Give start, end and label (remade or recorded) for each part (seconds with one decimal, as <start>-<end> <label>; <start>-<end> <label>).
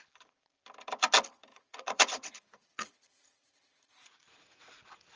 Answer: 0.0-1.5 recorded; 1.5-4.6 remade; 4.6-5.2 recorded